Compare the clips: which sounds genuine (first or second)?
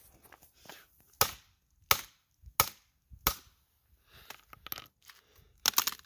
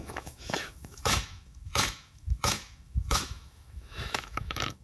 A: first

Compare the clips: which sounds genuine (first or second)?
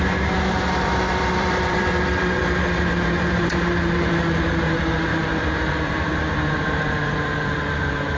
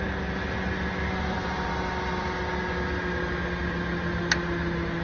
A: second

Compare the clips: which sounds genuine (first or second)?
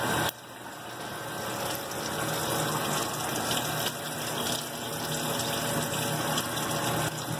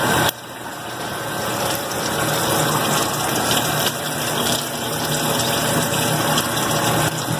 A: first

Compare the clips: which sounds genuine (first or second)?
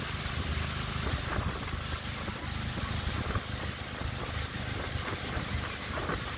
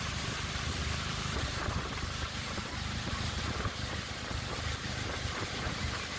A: first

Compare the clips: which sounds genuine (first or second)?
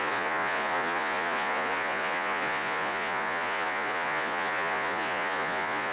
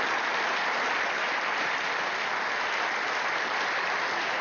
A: second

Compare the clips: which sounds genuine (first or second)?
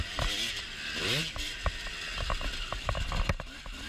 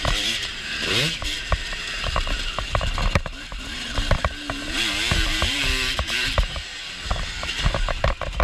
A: first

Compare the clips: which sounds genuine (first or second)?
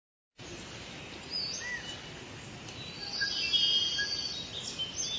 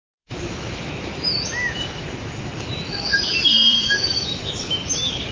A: first